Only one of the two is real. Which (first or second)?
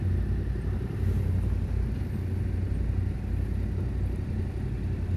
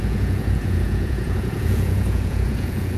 first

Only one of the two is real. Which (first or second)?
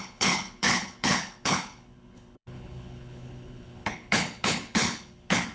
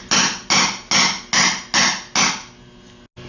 second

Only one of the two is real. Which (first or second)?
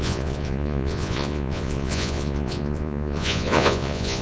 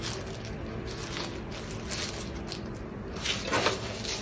second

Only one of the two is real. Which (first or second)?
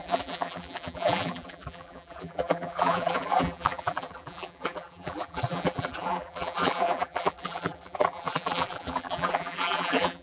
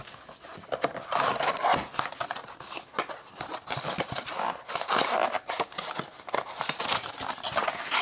second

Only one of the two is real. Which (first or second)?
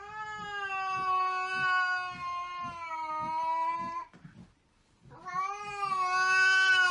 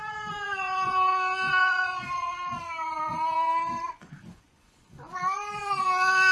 first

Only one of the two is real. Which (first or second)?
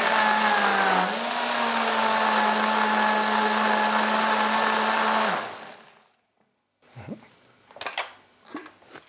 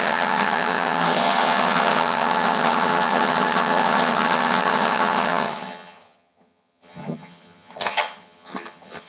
first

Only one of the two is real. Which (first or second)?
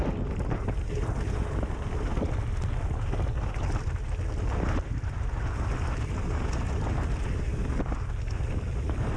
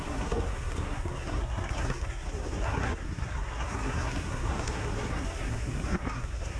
first